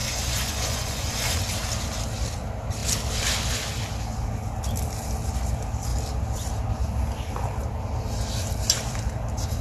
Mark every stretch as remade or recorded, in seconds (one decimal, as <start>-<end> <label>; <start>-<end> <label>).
0.0-1.4 remade; 1.4-9.6 recorded